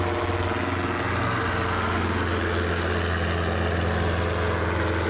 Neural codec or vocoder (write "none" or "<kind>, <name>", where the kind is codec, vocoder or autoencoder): none